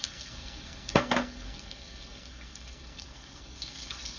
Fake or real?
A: fake